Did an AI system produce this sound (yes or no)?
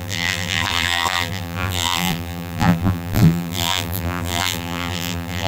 yes